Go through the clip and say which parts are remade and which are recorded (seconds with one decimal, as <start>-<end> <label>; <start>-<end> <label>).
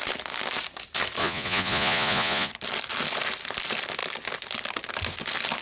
0.0-1.2 recorded; 1.2-2.5 remade; 2.5-5.6 recorded